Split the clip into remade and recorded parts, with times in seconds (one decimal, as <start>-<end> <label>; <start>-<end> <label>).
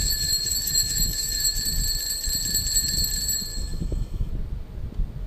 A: 0.0-1.6 remade; 1.6-3.5 recorded; 3.5-4.3 remade; 4.3-5.3 recorded